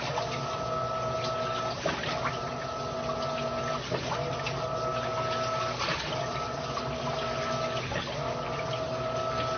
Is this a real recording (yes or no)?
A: yes